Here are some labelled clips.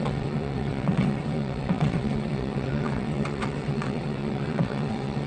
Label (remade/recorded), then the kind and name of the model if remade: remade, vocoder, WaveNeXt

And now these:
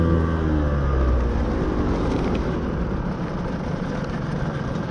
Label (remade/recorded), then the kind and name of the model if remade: recorded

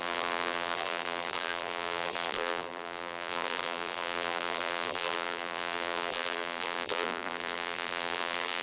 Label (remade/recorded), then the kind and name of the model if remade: remade, vocoder, BigVGAN v2